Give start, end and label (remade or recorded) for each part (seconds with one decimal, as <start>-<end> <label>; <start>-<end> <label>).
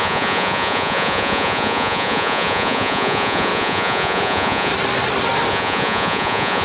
0.0-4.7 remade; 4.7-5.5 recorded; 5.5-6.6 remade